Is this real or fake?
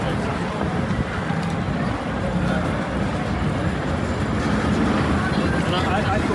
real